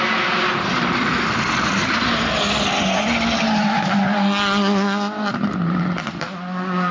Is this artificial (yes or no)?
no